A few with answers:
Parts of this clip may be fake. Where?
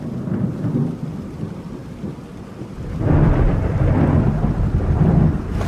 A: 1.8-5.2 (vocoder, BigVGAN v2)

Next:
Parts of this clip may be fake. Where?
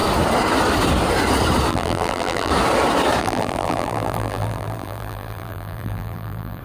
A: 1.7-2.5 (vocoder, BigVGAN v2); 3.2-6.6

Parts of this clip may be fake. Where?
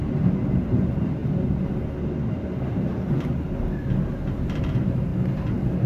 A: 0.0-1.2 (vocoder, BigVGAN v2); 4.6-5.1